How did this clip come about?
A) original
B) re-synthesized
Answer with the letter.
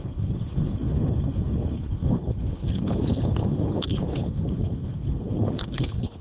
B